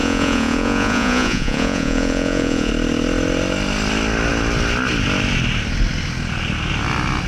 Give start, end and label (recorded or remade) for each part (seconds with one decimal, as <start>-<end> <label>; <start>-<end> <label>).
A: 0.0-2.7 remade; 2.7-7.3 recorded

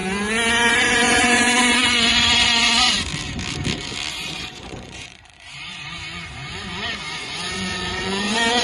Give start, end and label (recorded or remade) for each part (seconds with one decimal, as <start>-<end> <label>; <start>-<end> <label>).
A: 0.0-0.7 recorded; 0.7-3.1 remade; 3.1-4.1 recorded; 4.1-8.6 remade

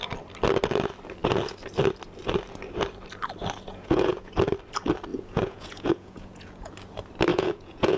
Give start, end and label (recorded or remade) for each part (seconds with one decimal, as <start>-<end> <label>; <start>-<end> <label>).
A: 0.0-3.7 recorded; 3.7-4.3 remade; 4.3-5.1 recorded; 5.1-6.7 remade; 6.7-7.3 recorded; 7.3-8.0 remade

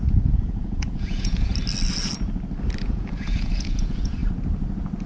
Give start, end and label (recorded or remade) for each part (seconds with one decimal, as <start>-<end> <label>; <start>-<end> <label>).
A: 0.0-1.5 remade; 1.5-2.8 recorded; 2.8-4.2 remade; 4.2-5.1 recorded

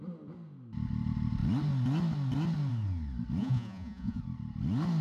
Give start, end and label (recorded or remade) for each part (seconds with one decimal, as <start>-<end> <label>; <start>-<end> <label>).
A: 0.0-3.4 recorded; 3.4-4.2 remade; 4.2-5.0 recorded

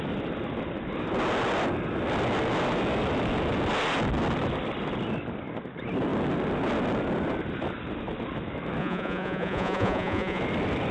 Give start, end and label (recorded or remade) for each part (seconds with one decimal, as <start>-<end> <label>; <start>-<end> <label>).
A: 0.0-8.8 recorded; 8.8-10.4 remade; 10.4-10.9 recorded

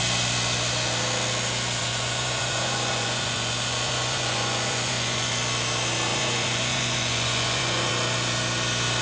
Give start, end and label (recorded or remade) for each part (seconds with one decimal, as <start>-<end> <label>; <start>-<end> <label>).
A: 0.0-1.8 recorded; 1.8-5.3 remade; 5.3-6.1 recorded; 6.1-7.9 remade; 7.9-9.0 recorded